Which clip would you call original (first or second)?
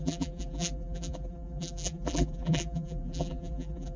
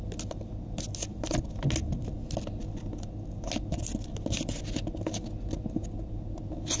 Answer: second